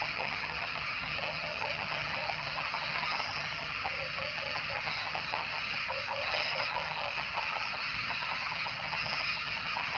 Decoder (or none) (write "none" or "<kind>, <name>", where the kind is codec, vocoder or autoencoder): vocoder, HiFi-GAN